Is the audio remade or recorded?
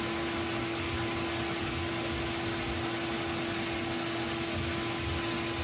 recorded